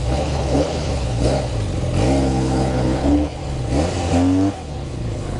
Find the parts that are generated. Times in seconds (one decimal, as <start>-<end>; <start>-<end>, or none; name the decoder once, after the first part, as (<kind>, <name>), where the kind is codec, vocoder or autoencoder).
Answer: 0.0-1.5 (codec, HILCodec); 2.2-3.4; 4.5-5.4